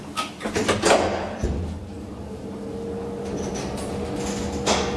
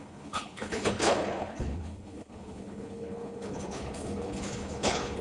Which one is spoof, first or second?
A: second